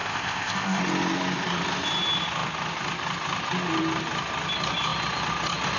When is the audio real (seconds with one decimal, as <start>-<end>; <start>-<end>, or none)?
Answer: 0.8-5.8